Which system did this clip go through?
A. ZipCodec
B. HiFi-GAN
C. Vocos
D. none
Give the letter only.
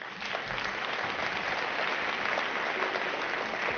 D